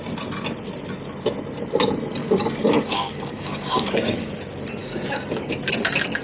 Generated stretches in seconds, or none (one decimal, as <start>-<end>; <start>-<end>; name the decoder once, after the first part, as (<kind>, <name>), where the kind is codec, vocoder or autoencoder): 2.2-4.3 (codec, DAC); 4.8-5.5